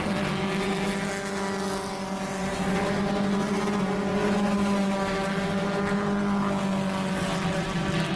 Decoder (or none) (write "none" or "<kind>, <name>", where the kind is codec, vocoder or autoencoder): none